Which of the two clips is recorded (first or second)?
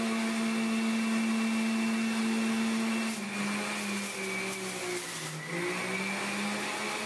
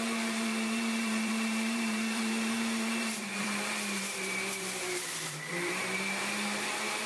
first